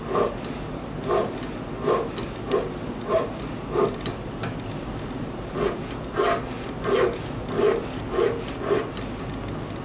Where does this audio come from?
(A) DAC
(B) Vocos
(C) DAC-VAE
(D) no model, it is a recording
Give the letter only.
D